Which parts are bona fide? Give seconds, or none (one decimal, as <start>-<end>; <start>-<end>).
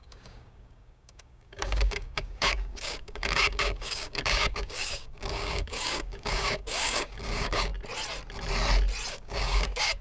7.7-9.1